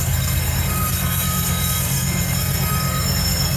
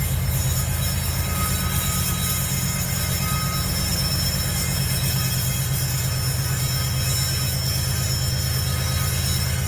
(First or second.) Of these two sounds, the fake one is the first